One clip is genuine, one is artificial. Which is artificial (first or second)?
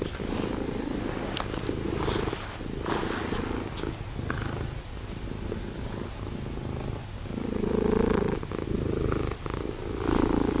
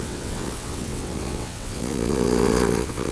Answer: second